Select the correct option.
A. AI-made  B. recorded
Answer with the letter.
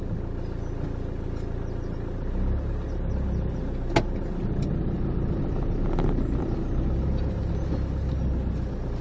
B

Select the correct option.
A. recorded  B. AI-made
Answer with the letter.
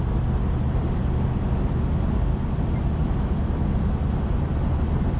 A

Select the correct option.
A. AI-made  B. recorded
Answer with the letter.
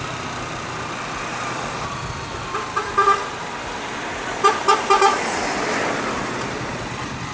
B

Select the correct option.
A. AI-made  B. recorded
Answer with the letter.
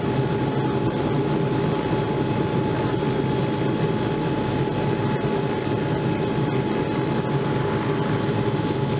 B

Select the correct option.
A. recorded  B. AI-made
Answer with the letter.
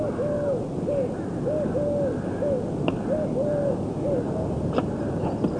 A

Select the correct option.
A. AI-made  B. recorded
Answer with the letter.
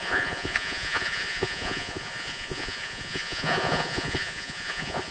A